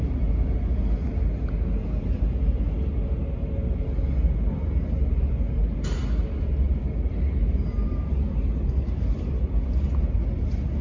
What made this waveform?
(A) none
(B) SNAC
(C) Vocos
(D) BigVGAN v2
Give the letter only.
A